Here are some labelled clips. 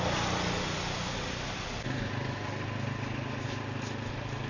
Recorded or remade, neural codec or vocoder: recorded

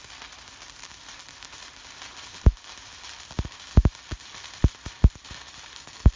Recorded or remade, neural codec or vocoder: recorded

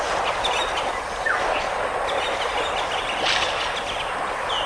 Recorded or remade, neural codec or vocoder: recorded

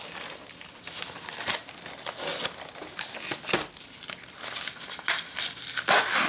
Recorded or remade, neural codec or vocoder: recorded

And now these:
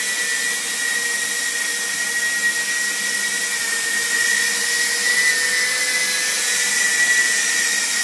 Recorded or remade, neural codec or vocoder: recorded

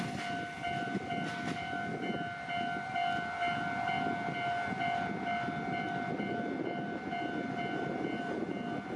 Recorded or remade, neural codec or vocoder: recorded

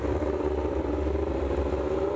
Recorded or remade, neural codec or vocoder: recorded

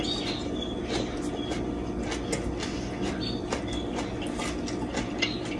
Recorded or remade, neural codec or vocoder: recorded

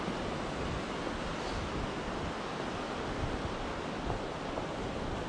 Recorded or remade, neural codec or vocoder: recorded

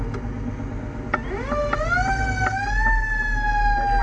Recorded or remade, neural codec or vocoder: recorded